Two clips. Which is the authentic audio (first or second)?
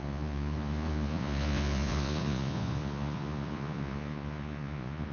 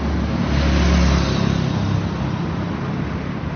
second